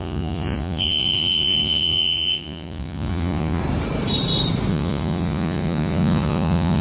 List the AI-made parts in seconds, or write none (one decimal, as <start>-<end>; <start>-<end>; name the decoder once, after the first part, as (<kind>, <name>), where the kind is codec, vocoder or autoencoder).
0.0-3.6 (vocoder, Vocos); 4.7-6.8